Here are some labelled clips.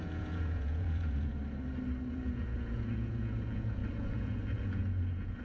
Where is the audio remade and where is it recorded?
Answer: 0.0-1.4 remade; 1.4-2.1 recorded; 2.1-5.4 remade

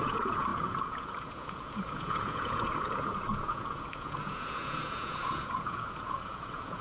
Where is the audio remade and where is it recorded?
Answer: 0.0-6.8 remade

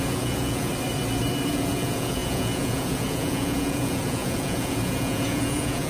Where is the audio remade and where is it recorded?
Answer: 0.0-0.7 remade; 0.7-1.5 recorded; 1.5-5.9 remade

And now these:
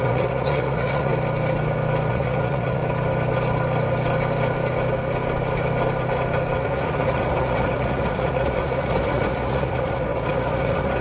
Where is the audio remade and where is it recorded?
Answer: 0.0-1.1 remade; 1.1-2.1 recorded; 2.1-2.8 remade; 2.8-6.6 recorded; 6.6-11.0 remade

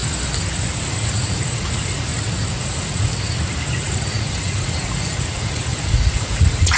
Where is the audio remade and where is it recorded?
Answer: 0.0-0.9 recorded; 0.9-2.1 remade; 2.1-2.6 recorded; 2.6-3.1 remade; 3.1-3.8 recorded; 3.8-6.8 remade

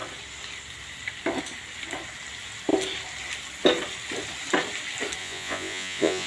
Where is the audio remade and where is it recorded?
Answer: 0.0-5.2 recorded; 5.2-6.3 remade

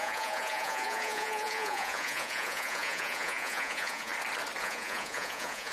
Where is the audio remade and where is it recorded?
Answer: 0.0-4.1 remade; 4.1-4.6 recorded; 4.6-5.7 remade